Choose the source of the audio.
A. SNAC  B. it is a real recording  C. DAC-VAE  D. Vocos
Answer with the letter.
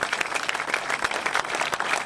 B